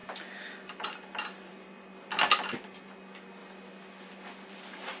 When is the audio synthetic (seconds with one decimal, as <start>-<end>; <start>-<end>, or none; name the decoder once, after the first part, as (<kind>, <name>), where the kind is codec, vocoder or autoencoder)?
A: none